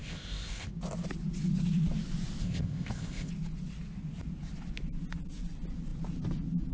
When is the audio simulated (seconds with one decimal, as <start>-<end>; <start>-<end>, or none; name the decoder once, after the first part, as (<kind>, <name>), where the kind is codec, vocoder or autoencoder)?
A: 0.0-0.7 (codec, ZipCodec); 2.4-3.3